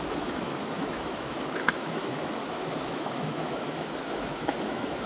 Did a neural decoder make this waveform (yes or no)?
yes